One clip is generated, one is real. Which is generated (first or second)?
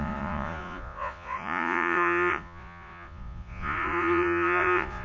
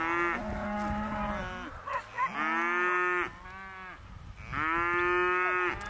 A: first